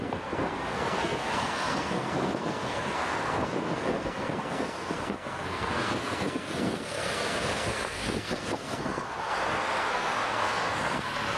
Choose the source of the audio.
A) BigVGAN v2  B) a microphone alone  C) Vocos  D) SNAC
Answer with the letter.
D